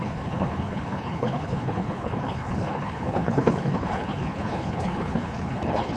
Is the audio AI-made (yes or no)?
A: yes